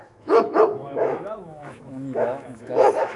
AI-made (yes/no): yes